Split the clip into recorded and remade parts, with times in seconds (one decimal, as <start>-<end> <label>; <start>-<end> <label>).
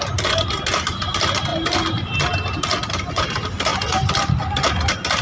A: 0.0-5.2 recorded